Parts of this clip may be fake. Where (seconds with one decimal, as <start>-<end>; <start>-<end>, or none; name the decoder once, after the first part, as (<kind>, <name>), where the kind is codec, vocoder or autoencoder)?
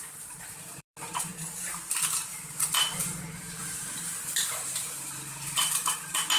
0.0-1.3 (vocoder, BigVGAN v2); 2.9-6.4